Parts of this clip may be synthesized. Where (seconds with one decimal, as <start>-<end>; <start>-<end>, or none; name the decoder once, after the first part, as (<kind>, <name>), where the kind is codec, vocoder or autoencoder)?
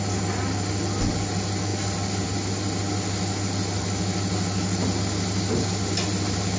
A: none